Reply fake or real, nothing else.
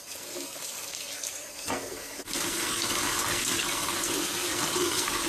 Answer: fake